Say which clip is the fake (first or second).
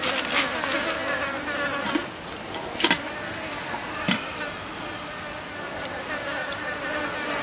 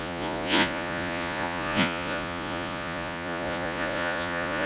second